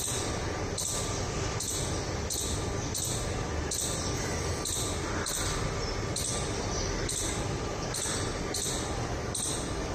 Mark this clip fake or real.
real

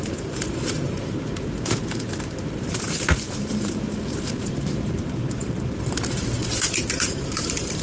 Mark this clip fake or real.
fake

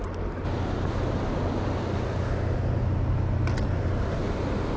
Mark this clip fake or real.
real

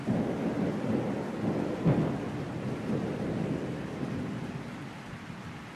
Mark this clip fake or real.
real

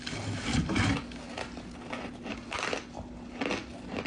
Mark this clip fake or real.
real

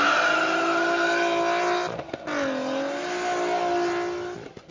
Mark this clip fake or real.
real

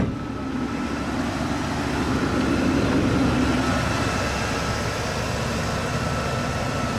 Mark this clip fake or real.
real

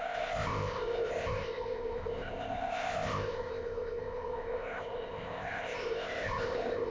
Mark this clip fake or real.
fake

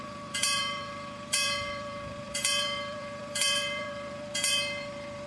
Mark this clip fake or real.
fake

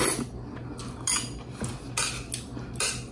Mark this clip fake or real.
real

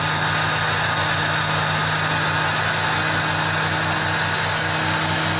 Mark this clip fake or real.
real